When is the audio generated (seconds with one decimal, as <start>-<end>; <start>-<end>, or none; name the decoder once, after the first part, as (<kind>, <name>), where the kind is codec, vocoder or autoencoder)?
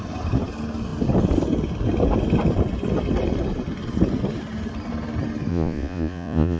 5.5-6.6 (vocoder, Vocos)